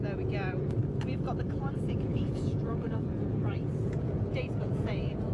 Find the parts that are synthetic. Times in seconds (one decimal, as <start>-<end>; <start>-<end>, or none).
0.0-0.8; 1.6-5.3